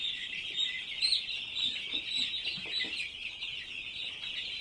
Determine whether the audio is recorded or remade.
recorded